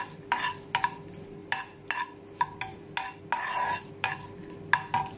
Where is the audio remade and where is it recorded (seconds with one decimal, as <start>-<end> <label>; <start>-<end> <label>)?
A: 0.0-5.2 recorded